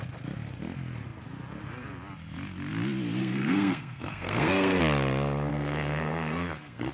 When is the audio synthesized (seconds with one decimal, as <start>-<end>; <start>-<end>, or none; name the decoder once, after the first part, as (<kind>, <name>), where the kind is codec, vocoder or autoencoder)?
3.2-4.8 (codec, SNAC); 5.5-6.9